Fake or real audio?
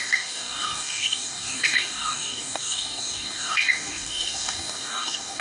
fake